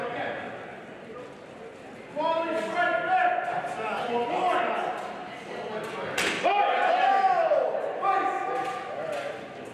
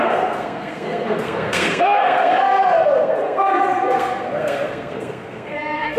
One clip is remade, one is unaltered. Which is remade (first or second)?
second